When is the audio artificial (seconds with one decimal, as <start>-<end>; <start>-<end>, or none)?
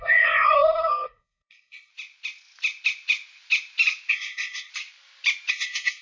0.0-1.9; 4.1-4.7; 5.5-6.0